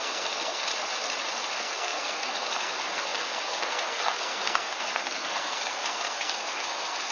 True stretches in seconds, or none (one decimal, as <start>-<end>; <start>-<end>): 0.7-1.5